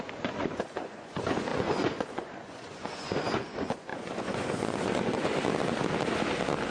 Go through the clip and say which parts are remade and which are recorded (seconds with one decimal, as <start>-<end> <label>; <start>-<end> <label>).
0.0-5.3 remade; 5.3-6.7 recorded